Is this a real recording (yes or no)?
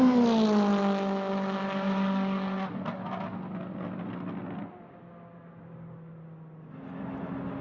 yes